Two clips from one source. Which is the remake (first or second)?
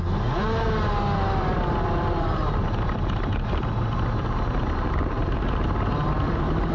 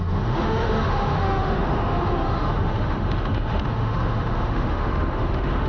second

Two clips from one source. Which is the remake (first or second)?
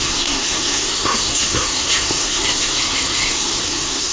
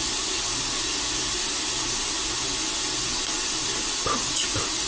first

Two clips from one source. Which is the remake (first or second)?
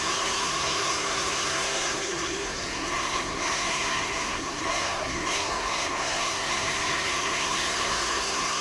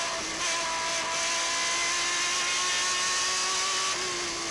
first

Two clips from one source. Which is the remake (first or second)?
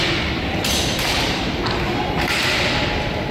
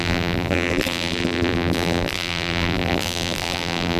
second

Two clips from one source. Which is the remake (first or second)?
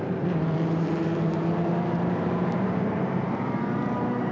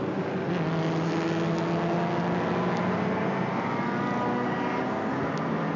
first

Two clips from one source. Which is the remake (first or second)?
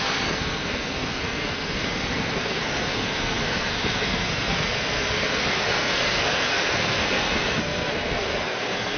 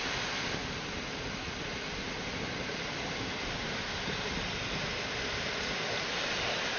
first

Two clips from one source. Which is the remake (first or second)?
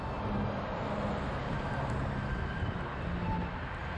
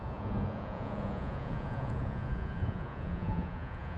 second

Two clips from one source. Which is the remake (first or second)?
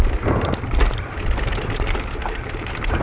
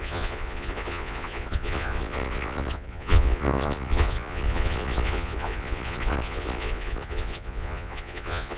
second